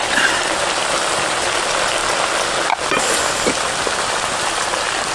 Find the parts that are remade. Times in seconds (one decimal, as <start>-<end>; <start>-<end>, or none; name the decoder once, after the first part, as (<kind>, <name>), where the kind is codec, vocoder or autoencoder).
none